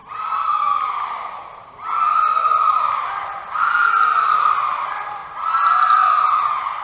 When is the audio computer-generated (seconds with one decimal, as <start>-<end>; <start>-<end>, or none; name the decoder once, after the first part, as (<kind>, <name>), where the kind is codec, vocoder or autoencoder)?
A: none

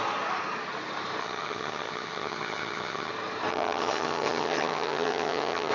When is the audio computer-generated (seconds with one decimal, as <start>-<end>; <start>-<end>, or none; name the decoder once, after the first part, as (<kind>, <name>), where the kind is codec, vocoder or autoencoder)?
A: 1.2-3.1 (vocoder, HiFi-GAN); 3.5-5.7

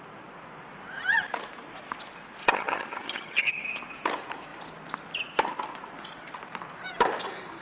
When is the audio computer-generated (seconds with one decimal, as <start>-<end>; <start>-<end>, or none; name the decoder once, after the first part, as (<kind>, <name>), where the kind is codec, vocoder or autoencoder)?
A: 2.4-3.6 (vocoder, HiFi-GAN)

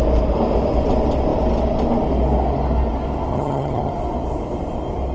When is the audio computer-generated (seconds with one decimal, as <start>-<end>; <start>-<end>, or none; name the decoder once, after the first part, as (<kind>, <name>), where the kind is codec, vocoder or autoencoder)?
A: 3.3-3.9 (vocoder, HiFi-GAN)